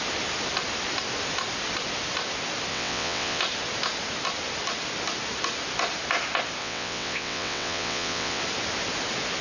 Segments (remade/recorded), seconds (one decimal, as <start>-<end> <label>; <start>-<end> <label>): 0.0-2.7 recorded; 2.7-3.4 remade; 3.4-6.6 recorded; 6.6-8.4 remade; 8.4-9.4 recorded